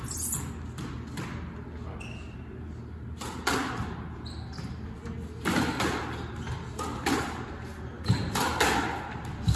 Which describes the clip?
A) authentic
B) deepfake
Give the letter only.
A